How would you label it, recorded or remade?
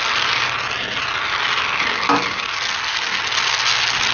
recorded